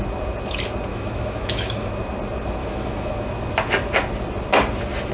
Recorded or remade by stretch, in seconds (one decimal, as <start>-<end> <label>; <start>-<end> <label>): 0.0-0.9 recorded; 0.9-1.9 remade; 1.9-2.6 recorded; 2.6-3.1 remade; 3.1-5.1 recorded